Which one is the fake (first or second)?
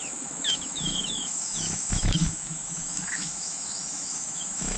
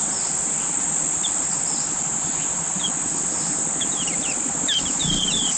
first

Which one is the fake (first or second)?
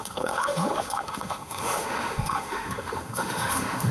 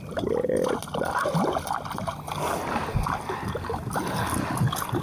first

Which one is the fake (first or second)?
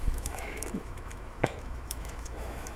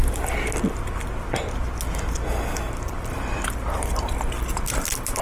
first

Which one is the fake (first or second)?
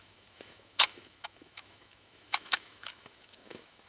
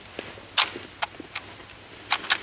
first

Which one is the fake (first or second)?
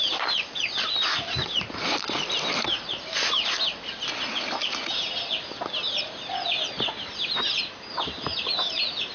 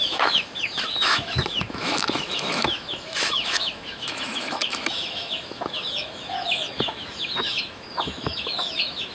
second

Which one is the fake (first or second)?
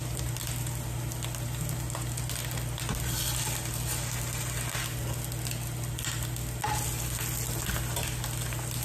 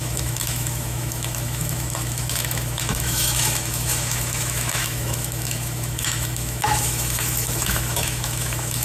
second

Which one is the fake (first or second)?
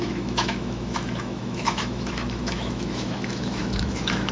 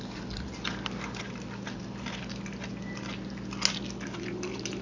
first